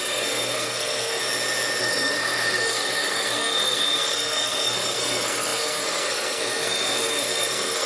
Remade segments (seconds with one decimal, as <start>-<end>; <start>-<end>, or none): 0.0-1.2; 1.8-7.9